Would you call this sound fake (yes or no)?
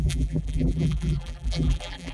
yes